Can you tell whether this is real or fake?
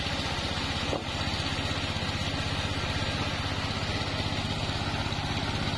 real